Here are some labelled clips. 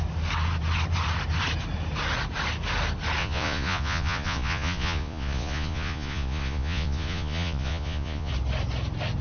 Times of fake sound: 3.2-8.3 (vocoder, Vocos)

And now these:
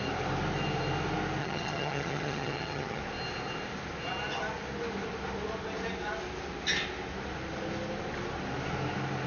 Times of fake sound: 1.4-3.0 (vocoder, HiFi-GAN)